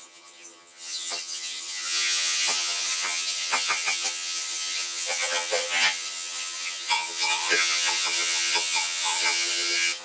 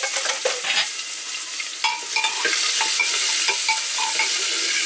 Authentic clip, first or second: second